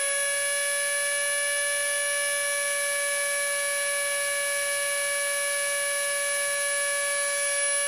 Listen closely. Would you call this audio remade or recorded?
recorded